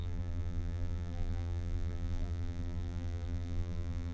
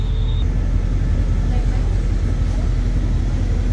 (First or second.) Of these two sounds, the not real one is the first